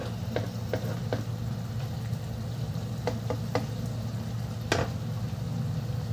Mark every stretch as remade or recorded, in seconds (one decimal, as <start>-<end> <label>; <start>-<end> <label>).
0.0-6.1 recorded